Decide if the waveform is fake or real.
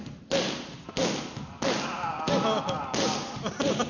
real